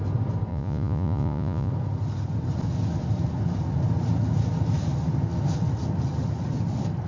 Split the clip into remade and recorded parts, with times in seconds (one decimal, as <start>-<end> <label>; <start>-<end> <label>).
0.0-0.5 recorded; 0.5-1.7 remade; 1.7-7.1 recorded